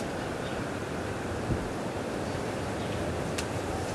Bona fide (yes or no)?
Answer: yes